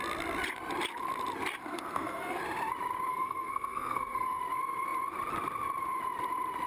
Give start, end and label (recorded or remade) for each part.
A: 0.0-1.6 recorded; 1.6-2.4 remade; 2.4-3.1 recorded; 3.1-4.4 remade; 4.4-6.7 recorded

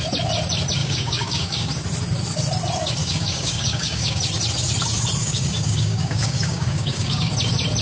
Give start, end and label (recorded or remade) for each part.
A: 0.0-0.8 recorded; 0.8-1.7 remade; 1.7-3.0 recorded; 3.0-4.2 remade; 4.2-5.2 recorded; 5.2-7.3 remade; 7.3-7.8 recorded

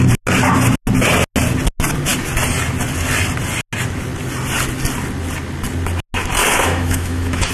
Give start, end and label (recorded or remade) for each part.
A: 0.0-6.4 recorded; 6.4-7.5 remade

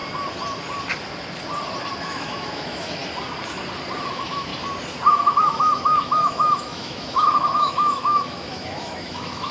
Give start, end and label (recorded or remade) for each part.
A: 0.0-2.0 recorded; 2.0-3.0 remade; 3.0-4.1 recorded; 4.1-4.5 remade; 4.5-5.1 recorded; 5.1-9.5 remade

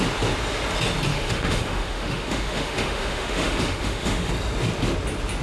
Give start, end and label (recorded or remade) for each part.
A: 0.0-1.1 recorded; 1.1-4.3 remade; 4.3-5.4 recorded

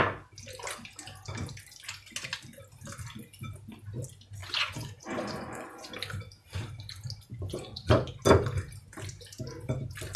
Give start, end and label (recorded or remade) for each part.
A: 0.0-4.4 recorded; 4.4-5.9 remade; 5.9-7.3 recorded; 7.3-8.1 remade; 8.1-10.2 recorded

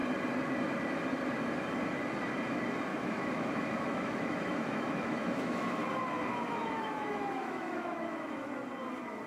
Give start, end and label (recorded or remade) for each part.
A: 0.0-2.9 recorded; 2.9-5.8 remade; 5.8-6.5 recorded; 6.5-8.5 remade; 8.5-9.3 recorded